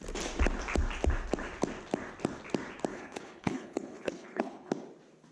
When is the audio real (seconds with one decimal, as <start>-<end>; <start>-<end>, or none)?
0.0-2.9; 4.7-5.3